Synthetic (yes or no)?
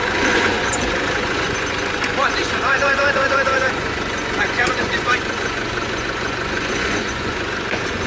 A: yes